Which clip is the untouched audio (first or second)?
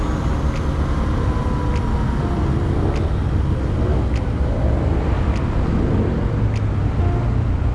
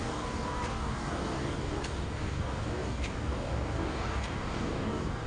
first